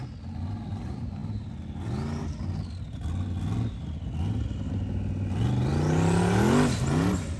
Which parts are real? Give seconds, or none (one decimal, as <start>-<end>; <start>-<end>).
0.0-7.4